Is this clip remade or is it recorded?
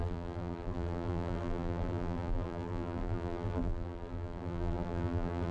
remade